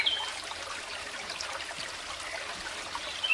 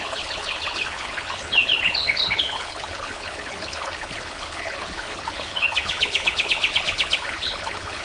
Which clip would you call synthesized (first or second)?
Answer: second